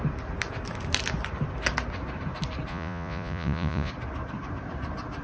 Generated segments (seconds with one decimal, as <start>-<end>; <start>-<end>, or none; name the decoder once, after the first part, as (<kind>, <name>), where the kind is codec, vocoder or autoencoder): 2.7-3.9 (vocoder, Vocos)